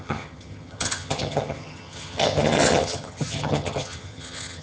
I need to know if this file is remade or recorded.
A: remade